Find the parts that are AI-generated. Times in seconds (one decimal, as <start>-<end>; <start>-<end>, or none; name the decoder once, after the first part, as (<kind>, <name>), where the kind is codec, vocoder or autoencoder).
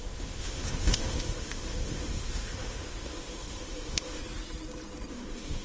0.0-4.2 (autoencoder, DAC-VAE); 5.1-5.6